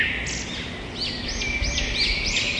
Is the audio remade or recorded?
recorded